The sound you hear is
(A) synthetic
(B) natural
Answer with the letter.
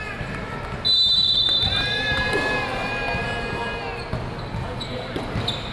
B